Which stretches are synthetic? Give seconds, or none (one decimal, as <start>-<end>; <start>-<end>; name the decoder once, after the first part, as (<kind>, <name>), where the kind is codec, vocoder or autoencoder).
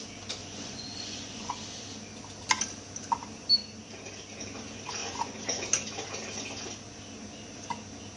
0.4-1.5 (vocoder, Vocos); 5.0-5.6